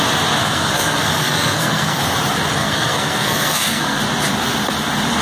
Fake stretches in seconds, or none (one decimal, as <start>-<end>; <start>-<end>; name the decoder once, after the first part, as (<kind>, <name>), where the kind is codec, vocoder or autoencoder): 0.4-2.0 (codec, SNAC); 2.6-4.0